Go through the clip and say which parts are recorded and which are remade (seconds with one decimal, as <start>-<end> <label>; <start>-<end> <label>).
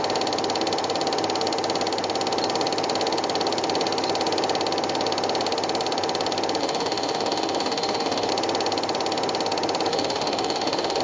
0.0-6.6 recorded; 6.6-8.3 remade; 8.3-9.9 recorded; 9.9-11.0 remade